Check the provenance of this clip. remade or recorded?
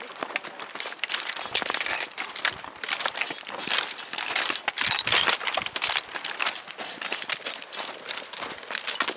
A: remade